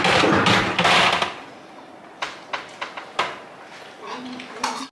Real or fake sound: real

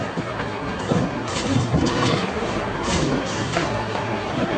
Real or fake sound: fake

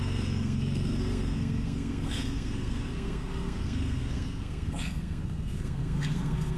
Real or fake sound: fake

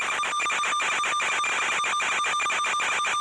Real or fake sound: real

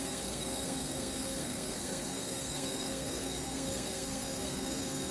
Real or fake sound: fake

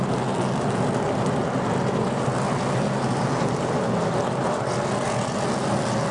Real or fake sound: real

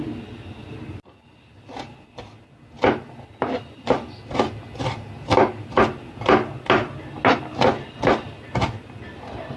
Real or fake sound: real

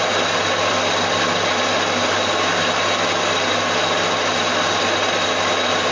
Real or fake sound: real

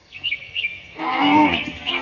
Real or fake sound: fake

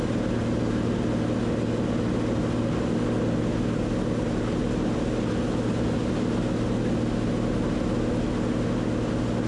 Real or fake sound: real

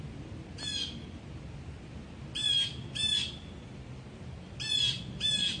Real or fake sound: real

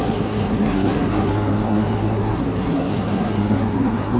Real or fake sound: fake